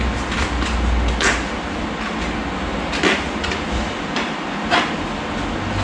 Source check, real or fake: real